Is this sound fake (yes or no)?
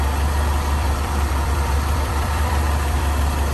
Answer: yes